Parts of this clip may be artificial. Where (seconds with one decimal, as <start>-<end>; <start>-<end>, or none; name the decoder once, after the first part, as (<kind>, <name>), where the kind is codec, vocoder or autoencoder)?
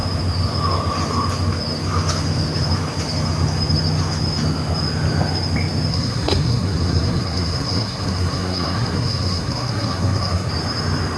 5.9-10.5 (codec, SNAC)